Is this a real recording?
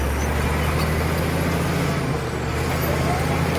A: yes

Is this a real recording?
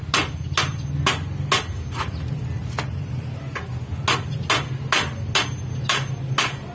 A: yes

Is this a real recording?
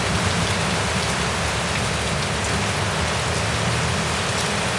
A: yes